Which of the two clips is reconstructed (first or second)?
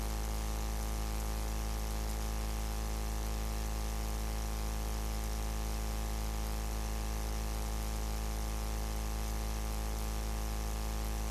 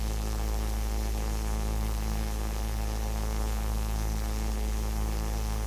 second